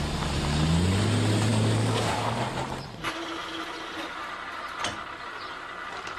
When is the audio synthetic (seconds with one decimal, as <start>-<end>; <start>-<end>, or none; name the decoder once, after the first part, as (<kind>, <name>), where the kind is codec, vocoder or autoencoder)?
1.5-2.4 (codec, DAC)